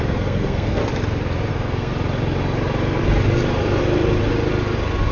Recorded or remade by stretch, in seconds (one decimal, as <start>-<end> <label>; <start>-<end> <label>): 0.0-0.8 remade; 0.8-1.5 recorded; 1.5-1.9 remade; 1.9-5.1 recorded